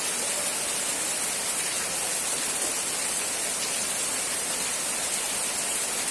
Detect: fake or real real